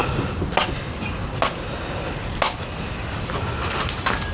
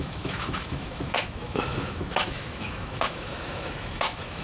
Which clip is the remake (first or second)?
second